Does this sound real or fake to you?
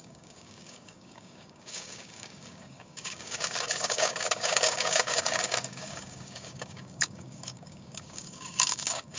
fake